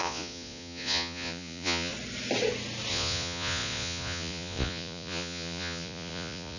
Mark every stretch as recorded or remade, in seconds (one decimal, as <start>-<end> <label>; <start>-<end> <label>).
0.0-1.9 remade; 1.9-2.9 recorded; 2.9-6.6 remade